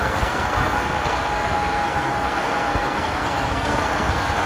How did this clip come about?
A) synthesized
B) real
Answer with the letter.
A